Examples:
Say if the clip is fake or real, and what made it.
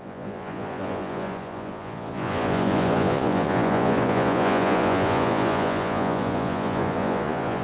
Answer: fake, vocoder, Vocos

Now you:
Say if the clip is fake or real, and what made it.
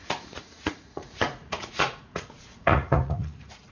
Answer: fake, vocoder, Vocos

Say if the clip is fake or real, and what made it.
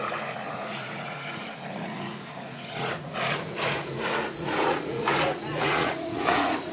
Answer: fake, vocoder, Vocos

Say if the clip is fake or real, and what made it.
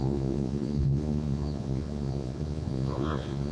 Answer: fake, vocoder, Vocos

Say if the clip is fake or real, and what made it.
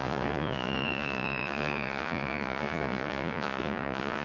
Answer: fake, vocoder, Vocos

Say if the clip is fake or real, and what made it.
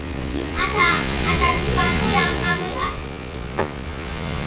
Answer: fake, vocoder, Vocos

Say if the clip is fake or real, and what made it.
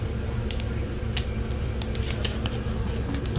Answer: real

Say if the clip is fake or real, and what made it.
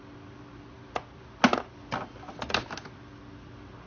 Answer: real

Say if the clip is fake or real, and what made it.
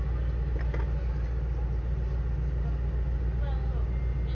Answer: real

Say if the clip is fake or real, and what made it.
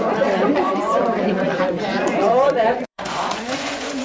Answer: fake, vocoder, Vocos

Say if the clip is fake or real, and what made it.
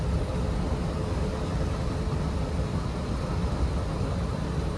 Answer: real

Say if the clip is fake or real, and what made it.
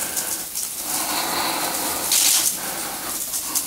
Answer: real